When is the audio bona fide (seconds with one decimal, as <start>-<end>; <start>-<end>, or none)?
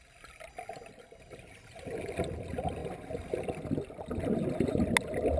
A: 0.0-5.4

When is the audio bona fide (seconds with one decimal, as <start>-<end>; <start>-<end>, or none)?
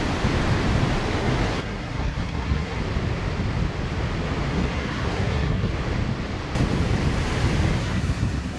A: 0.0-1.2; 2.8-4.5; 5.7-7.8